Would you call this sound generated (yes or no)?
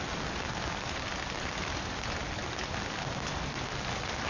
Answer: no